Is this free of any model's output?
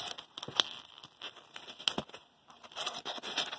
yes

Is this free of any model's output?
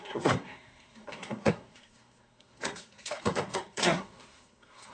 no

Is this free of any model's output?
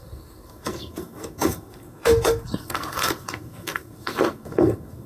no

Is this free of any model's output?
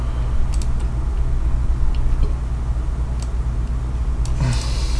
yes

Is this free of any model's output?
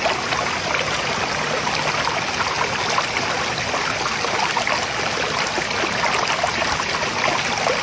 yes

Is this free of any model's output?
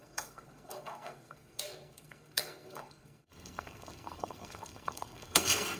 no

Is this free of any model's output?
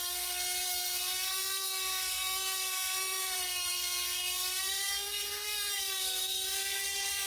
no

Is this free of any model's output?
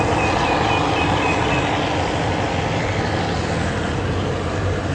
yes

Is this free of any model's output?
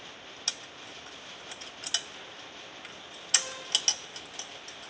yes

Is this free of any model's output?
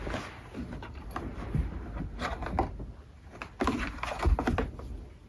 yes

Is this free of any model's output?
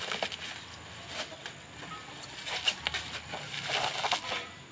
yes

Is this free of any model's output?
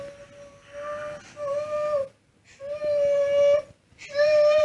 yes